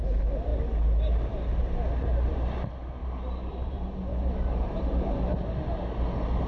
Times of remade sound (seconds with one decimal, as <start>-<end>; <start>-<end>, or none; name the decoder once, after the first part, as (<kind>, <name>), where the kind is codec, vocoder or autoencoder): 3.0-5.1 (vocoder, BigVGAN v2)